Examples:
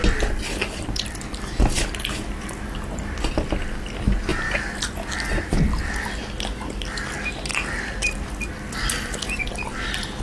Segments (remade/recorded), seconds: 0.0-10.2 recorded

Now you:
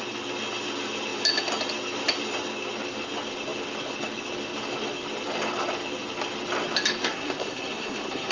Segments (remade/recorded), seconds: 0.0-7.0 recorded; 7.0-8.3 remade

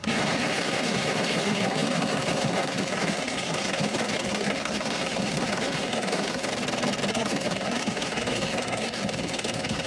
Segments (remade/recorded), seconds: 0.0-6.5 remade; 6.5-7.1 recorded; 7.1-9.9 remade